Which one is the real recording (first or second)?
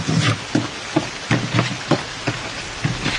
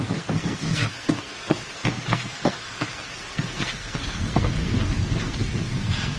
first